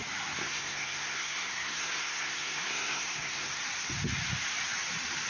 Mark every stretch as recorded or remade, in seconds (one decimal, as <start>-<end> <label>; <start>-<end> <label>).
0.0-0.4 recorded; 0.4-3.6 remade; 3.6-5.3 recorded